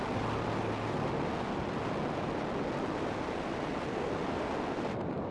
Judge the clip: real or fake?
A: real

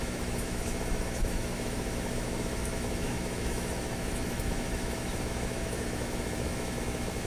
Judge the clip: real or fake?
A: fake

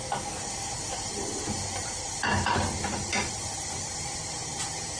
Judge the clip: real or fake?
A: real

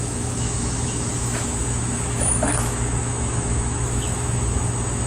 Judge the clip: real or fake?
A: fake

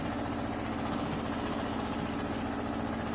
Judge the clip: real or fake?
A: real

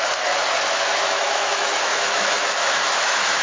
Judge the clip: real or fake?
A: fake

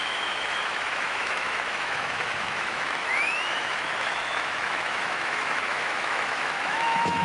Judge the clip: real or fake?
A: fake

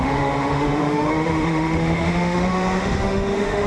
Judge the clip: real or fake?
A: fake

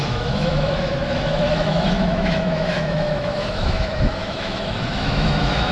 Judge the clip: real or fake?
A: fake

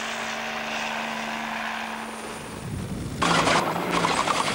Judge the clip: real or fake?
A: real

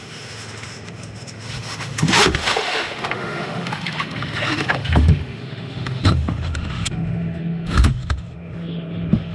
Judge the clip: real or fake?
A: fake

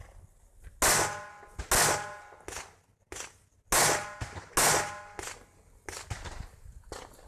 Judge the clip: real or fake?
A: real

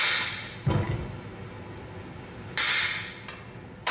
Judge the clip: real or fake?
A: real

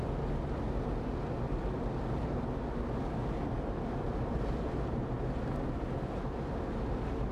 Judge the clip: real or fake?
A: real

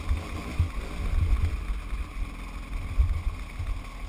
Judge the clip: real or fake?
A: real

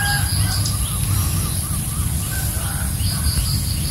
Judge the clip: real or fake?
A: real